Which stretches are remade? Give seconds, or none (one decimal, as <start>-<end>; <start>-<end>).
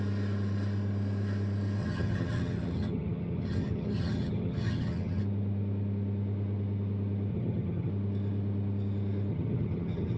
1.8-5.2; 7.3-7.9; 9.3-10.2